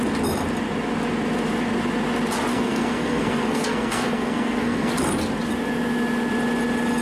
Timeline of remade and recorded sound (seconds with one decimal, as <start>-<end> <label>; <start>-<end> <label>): 0.0-2.5 recorded; 2.5-4.9 remade; 4.9-7.0 recorded

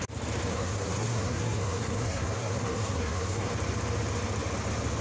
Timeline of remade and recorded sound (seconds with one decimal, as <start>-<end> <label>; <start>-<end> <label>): 0.0-0.5 recorded; 0.5-3.5 remade; 3.5-5.0 recorded

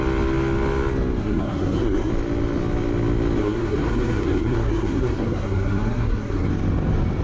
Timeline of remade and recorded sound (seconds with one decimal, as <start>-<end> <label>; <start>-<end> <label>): 0.0-1.2 recorded; 1.2-2.1 remade; 2.1-3.4 recorded; 3.4-6.5 remade; 6.5-7.2 recorded